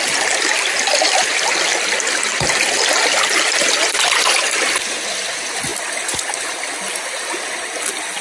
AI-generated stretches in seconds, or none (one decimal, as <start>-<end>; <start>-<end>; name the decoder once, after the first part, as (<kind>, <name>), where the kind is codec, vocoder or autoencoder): 5.7-6.8 (vocoder, BigVGAN v2)